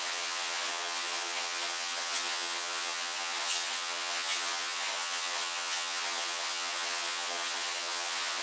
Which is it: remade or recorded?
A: remade